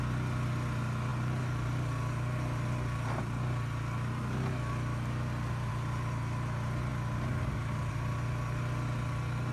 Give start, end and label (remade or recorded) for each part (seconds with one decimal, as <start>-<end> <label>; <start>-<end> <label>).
0.0-9.5 recorded